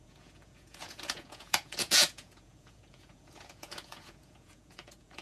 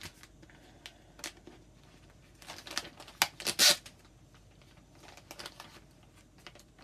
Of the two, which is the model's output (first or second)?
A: first